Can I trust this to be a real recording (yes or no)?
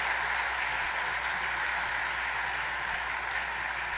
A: yes